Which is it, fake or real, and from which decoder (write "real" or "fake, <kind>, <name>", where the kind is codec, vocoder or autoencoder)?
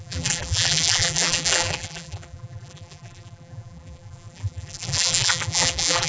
fake, vocoder, BigVGAN v2